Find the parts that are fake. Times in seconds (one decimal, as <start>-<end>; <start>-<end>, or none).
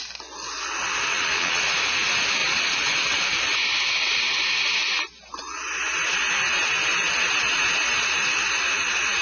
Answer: 1.1-1.6; 2.4-3.2